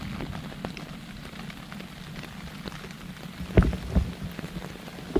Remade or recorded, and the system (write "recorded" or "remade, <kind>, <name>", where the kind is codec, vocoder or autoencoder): recorded